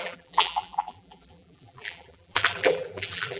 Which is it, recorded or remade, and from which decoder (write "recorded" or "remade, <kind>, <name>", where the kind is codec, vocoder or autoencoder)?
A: remade, vocoder, BigVGAN v2